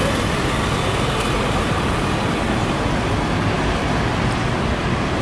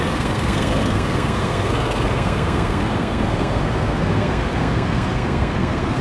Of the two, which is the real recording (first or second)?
first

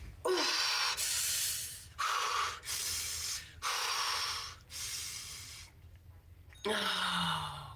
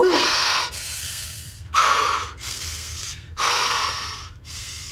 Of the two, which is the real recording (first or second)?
first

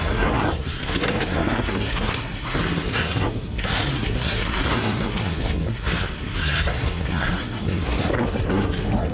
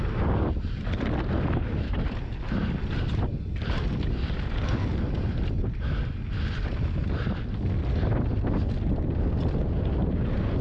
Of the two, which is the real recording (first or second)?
second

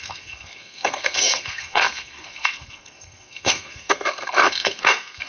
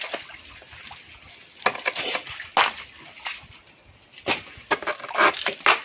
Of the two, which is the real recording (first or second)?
second